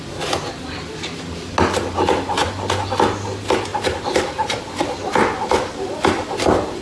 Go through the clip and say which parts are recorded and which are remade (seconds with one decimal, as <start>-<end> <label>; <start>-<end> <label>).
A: 0.0-6.8 recorded